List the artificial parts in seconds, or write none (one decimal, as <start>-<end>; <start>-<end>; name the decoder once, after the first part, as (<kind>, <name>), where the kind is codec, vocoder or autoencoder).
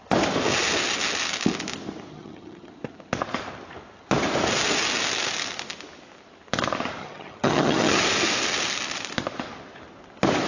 2.1-2.7 (vocoder, HiFi-GAN); 7.0-8.0